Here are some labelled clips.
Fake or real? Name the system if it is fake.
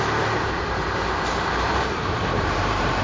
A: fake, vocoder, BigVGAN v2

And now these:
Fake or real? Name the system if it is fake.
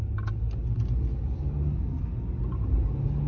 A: real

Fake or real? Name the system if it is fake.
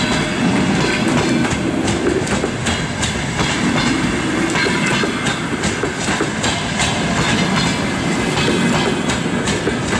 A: real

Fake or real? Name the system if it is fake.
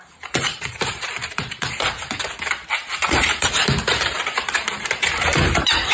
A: fake, vocoder, BigVGAN v2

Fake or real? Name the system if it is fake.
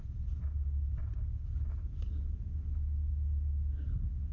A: real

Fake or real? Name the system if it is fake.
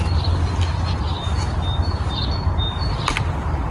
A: real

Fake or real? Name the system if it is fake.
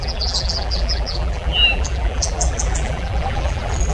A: fake, vocoder, BigVGAN v2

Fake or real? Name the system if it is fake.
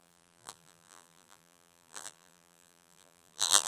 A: fake, vocoder, BigVGAN v2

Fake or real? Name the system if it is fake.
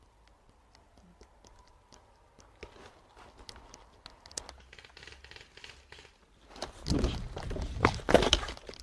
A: real